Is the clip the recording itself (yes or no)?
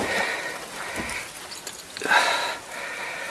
yes